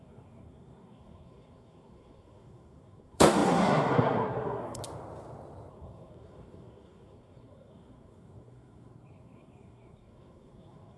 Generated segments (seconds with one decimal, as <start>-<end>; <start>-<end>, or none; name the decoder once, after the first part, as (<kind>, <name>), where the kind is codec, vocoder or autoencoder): 0.0-4.8 (codec, SNAC); 5.7-11.0

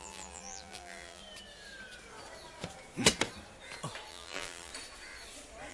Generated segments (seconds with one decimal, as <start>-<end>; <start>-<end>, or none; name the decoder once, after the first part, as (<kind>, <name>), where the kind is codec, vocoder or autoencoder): 0.0-1.2 (vocoder, BigVGAN v2); 4.1-4.7

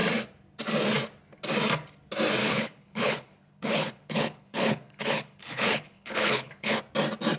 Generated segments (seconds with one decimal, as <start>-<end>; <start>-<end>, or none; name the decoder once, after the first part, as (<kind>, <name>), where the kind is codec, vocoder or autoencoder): 2.4-6.8 (codec, HILCodec)

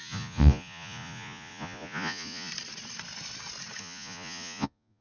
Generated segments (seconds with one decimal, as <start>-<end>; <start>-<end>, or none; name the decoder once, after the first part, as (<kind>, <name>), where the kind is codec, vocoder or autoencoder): 0.0-2.5 (vocoder, Vocos); 3.8-5.0